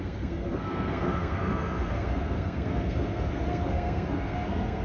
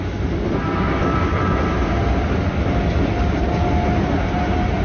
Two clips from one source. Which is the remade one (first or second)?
first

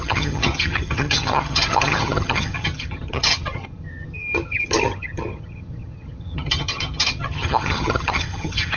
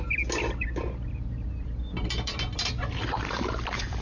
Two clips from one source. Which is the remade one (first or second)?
first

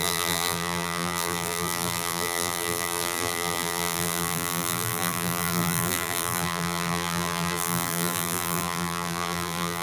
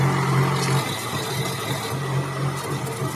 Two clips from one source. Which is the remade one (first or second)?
first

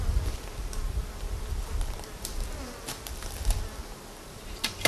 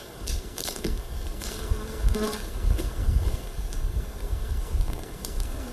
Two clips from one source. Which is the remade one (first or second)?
second